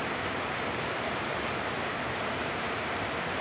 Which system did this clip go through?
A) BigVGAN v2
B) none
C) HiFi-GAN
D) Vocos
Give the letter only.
A